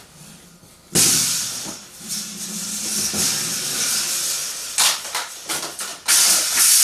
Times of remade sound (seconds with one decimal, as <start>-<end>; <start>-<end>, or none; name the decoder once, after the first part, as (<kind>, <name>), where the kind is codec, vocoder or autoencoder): none